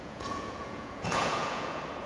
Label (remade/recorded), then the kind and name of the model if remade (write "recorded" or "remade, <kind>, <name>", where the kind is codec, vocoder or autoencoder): remade, vocoder, Vocos